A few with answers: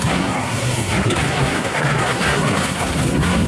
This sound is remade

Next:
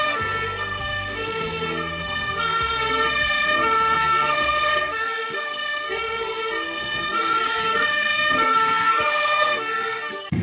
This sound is remade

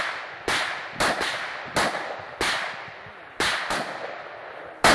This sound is recorded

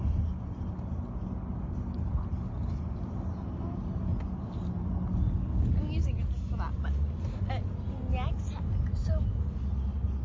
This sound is recorded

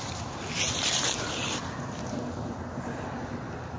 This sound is recorded